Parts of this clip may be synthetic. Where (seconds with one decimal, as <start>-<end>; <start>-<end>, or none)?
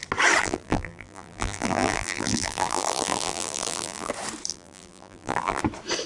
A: 0.4-4.1; 4.5-5.6